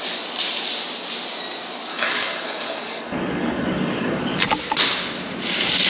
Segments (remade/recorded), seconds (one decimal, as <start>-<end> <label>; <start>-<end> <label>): 0.0-1.9 recorded; 1.9-4.2 remade; 4.2-5.9 recorded